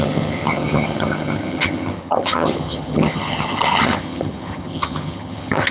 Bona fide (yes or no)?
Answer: no